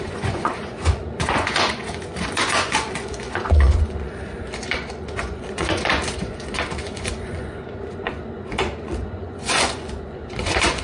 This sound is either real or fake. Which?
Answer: fake